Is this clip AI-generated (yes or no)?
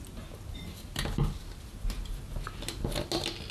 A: no